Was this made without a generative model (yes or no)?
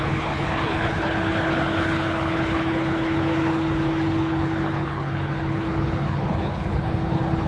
no